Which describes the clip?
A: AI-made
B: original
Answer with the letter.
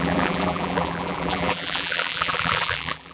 A